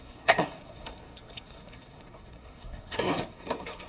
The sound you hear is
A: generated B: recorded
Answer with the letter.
A